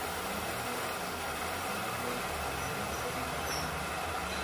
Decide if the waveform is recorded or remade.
recorded